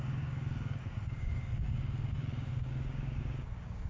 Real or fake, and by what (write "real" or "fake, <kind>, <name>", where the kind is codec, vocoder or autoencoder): fake, codec, DAC